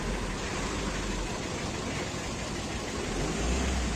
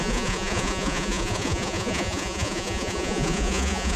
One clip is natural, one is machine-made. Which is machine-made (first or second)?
second